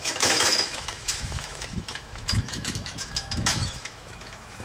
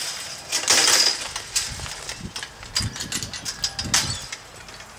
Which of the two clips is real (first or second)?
second